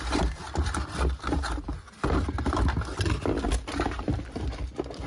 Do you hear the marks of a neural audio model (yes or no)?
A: no